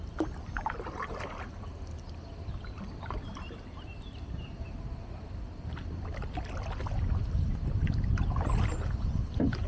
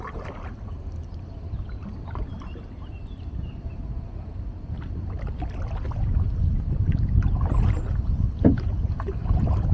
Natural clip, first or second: first